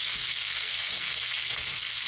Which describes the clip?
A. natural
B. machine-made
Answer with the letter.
B